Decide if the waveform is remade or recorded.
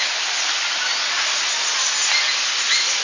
recorded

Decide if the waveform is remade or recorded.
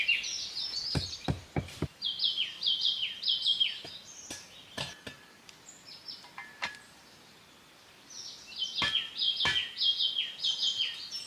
recorded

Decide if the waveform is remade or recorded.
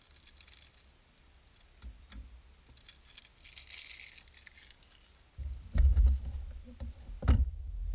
recorded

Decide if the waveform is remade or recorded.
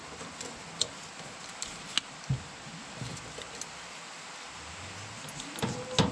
recorded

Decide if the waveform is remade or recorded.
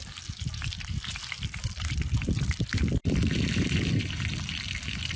recorded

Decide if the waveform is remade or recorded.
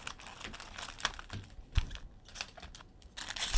recorded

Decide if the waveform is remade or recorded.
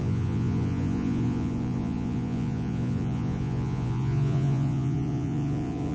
remade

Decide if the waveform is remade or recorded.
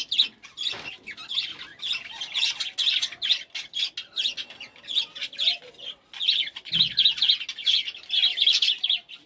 recorded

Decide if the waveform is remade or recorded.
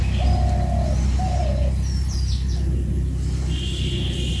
recorded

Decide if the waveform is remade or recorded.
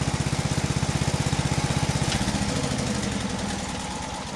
recorded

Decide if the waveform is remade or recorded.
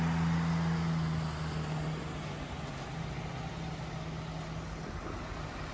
recorded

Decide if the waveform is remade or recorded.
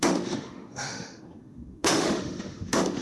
remade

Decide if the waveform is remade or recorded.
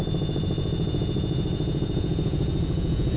remade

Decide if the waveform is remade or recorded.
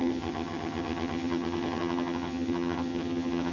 remade